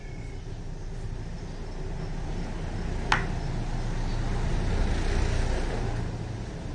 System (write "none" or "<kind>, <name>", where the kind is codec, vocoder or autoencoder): none